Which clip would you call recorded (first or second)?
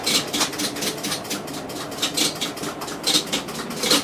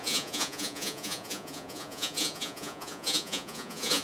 first